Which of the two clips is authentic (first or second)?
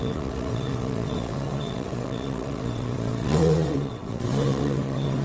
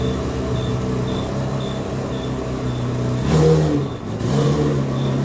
second